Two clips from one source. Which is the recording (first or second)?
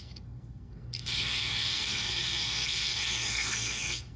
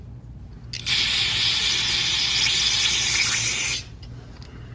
second